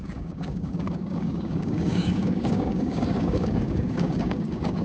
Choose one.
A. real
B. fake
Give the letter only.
B